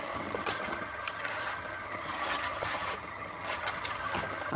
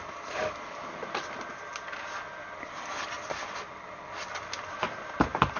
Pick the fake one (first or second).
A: first